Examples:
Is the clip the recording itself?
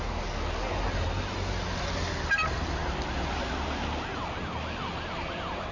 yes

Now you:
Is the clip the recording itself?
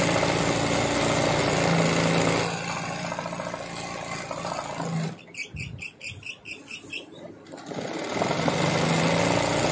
yes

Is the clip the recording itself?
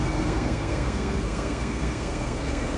no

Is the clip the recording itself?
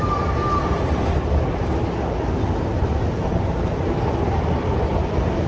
yes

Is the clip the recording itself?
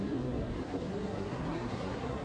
no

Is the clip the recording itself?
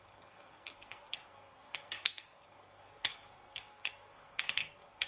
no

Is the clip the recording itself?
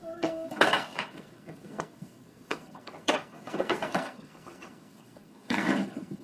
no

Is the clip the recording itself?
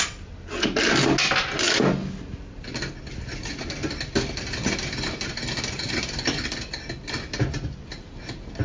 yes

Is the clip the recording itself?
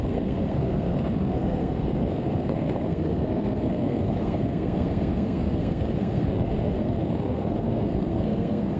no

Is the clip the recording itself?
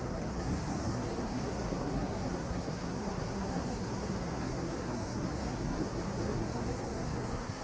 no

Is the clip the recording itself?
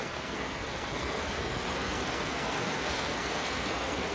no